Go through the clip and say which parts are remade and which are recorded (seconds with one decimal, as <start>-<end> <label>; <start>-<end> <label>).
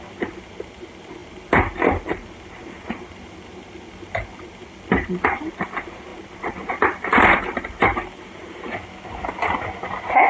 0.0-10.3 recorded